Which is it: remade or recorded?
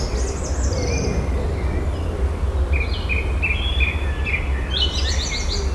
recorded